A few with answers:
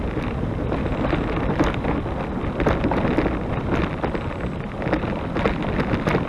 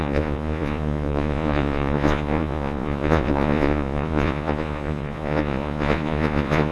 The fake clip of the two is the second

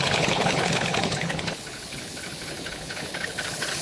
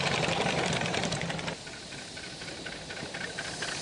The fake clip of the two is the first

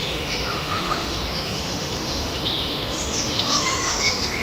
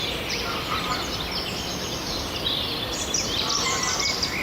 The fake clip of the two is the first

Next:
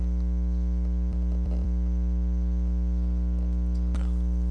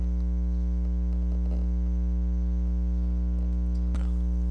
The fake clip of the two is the first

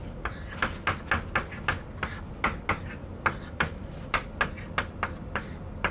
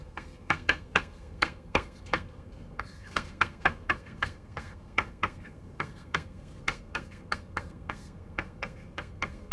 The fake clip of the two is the second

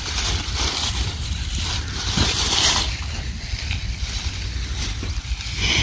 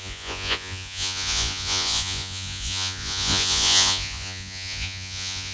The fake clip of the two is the second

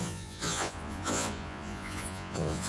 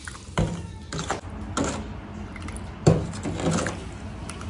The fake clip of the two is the first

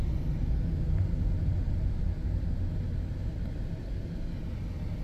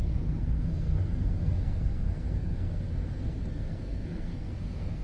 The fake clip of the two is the second